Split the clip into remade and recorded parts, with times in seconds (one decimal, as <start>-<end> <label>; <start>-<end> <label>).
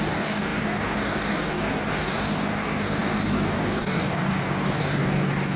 0.0-5.6 remade